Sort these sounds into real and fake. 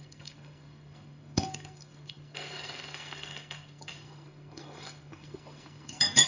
fake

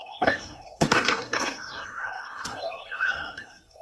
fake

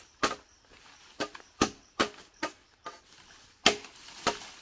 real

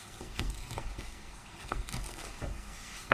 fake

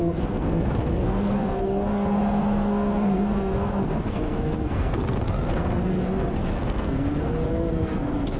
fake